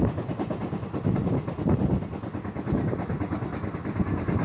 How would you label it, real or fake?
real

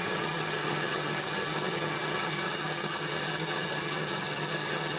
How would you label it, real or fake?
fake